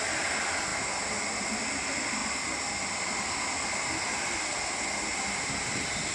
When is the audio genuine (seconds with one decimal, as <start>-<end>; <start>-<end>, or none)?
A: 0.0-6.1